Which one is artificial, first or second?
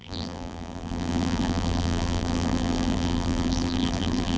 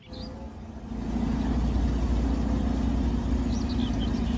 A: first